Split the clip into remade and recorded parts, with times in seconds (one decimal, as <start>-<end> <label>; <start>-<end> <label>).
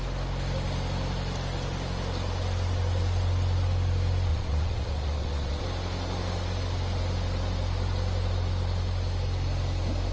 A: 0.0-4.3 recorded; 4.3-5.6 remade; 5.6-10.1 recorded